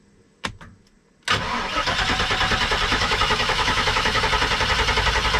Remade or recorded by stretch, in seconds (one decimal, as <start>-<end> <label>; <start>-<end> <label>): 0.0-2.9 recorded; 2.9-4.2 remade; 4.2-5.4 recorded